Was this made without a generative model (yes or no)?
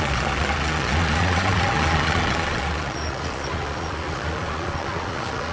no